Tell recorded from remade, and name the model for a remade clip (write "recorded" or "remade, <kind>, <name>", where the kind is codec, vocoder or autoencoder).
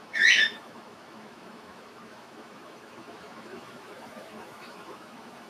remade, autoencoder, DAC-VAE